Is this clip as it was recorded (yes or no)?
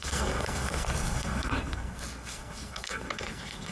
no